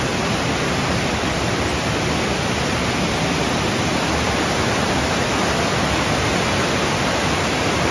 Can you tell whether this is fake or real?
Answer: real